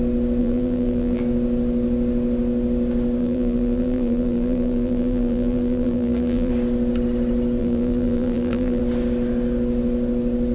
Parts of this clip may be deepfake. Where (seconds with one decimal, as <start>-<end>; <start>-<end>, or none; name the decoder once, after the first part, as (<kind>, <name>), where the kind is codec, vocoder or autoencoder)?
0.4-1.2 (vocoder, BigVGAN v2); 3.2-6.5; 7.6-8.8